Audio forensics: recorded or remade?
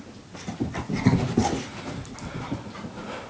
recorded